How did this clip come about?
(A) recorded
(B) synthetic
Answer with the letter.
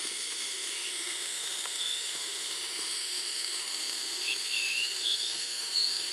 B